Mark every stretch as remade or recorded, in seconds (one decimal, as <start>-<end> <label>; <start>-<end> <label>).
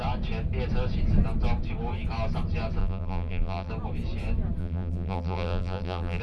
0.0-2.8 recorded; 2.8-3.7 remade; 3.7-4.6 recorded; 4.6-6.2 remade